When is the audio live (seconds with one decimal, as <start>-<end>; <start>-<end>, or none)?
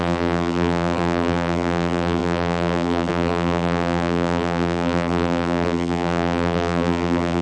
none